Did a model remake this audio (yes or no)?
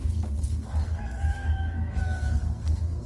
yes